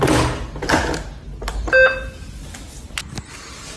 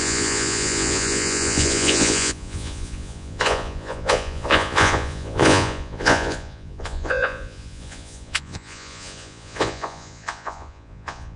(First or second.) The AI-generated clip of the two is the second